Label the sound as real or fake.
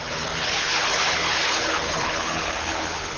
fake